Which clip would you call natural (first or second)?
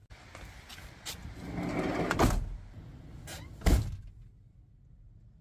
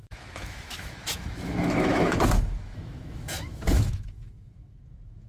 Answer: first